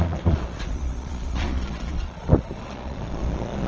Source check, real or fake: fake